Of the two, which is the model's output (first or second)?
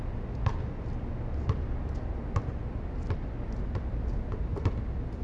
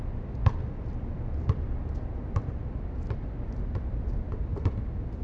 second